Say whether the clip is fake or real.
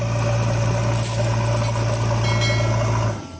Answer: real